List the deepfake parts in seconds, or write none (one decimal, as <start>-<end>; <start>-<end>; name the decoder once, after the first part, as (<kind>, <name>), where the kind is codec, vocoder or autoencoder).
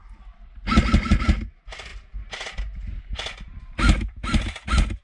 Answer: none